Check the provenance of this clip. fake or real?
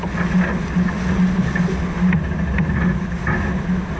real